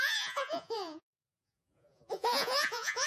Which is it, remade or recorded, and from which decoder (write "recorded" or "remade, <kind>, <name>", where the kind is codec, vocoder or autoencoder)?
remade, vocoder, Vocos